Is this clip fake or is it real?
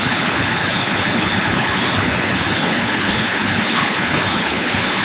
fake